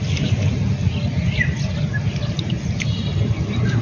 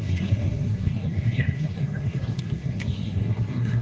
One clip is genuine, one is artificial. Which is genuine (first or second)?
first